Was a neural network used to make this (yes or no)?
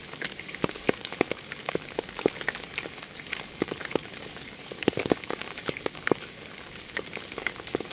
yes